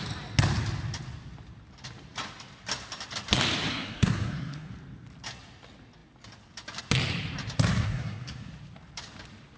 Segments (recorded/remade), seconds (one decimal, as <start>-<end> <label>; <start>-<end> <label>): 0.0-3.7 recorded; 3.7-4.7 remade; 4.7-7.8 recorded; 7.8-8.5 remade; 8.5-9.6 recorded

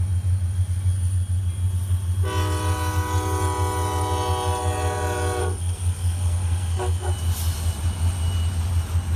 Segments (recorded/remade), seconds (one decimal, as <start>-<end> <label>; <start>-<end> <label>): 0.0-5.4 recorded; 5.4-7.1 remade; 7.1-9.2 recorded

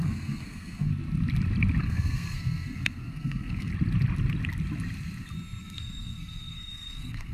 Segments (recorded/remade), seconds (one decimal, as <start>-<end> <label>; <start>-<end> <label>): 0.0-0.9 remade; 0.9-1.8 recorded; 1.8-3.7 remade; 3.7-5.6 recorded; 5.6-7.3 remade

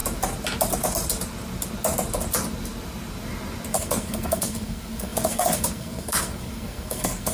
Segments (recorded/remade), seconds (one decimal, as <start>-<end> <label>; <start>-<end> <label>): 0.0-3.7 recorded; 3.7-7.3 remade

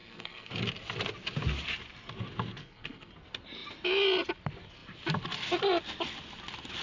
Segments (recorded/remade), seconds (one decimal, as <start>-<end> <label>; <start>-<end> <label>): 0.0-0.5 remade; 0.5-2.6 recorded; 2.6-3.1 remade; 3.1-6.8 recorded